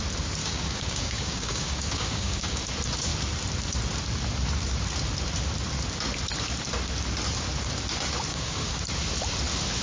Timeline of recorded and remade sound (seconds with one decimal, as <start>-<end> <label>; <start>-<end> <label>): 0.0-0.4 recorded; 0.4-2.6 remade; 2.6-8.3 recorded; 8.3-8.8 remade; 8.8-9.8 recorded